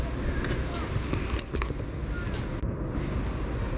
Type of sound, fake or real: real